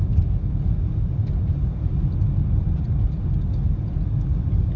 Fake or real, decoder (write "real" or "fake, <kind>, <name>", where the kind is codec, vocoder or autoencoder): real